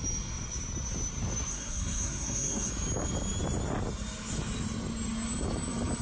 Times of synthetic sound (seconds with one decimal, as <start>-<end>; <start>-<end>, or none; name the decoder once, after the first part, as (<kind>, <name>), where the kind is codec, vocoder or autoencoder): 1.5-2.7 (codec, SNAC)